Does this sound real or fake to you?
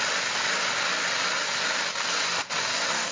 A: real